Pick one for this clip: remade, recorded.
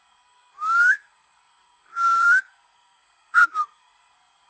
remade